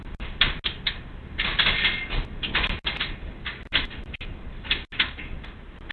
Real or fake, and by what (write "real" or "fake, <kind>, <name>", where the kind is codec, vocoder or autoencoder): real